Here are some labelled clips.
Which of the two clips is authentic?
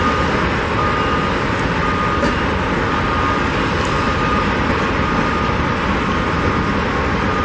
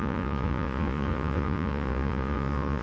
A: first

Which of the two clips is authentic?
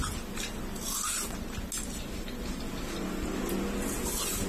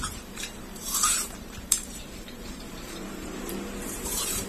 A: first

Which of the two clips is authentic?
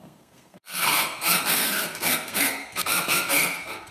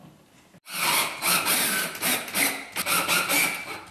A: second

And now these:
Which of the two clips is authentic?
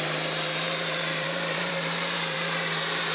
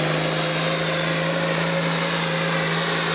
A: second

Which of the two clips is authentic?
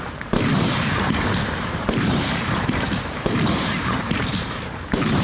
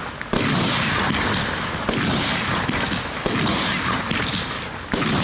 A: second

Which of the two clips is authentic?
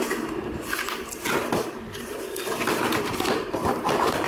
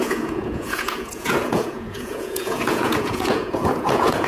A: first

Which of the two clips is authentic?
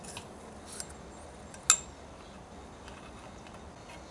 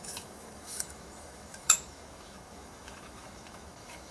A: first